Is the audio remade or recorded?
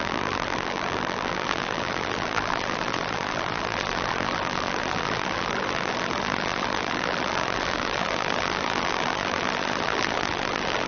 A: remade